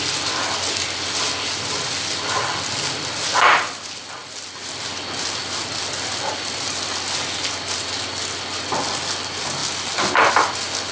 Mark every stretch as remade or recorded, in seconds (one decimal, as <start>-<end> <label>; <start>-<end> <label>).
0.0-10.9 recorded